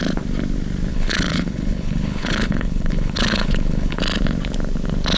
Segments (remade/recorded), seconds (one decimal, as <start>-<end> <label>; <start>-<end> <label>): 0.0-0.9 recorded; 0.9-4.0 remade; 4.0-5.2 recorded